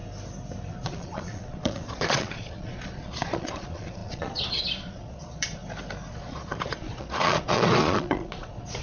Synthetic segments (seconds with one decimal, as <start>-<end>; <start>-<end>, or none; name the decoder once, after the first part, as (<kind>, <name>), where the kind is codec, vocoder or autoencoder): 0.7-5.6 (vocoder, Vocos); 6.1-8.8